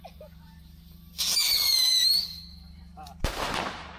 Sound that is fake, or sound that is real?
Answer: fake